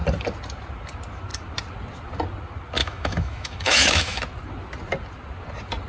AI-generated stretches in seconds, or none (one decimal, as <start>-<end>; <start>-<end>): 2.8-4.2